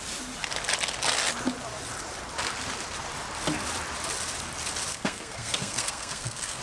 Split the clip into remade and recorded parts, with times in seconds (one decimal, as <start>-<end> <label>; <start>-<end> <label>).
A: 0.0-4.9 recorded; 4.9-6.6 remade